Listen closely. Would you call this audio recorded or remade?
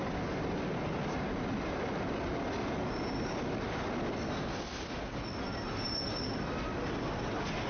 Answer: recorded